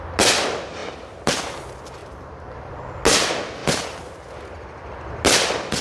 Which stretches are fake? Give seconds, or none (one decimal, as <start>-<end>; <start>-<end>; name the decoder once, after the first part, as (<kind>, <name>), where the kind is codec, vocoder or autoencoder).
0.8-1.6 (vocoder, BigVGAN v2); 2.0-2.7